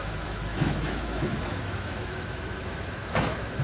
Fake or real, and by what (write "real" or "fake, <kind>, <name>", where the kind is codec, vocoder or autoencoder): fake, autoencoder, DAC-VAE